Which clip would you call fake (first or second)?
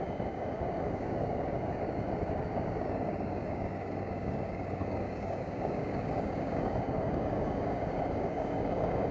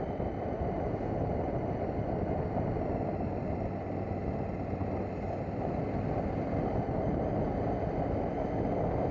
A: first